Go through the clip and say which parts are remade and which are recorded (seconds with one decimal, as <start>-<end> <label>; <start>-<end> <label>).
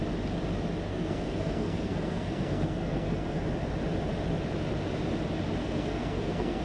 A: 0.0-0.9 recorded; 0.9-3.4 remade; 3.4-5.6 recorded; 5.6-6.6 remade